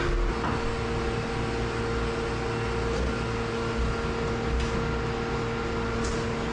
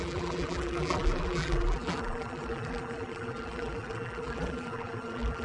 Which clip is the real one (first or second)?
first